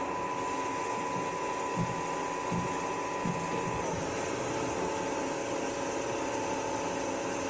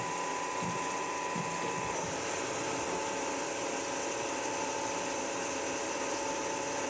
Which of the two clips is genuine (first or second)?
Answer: first